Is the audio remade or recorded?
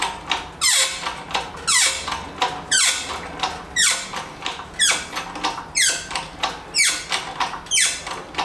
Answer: recorded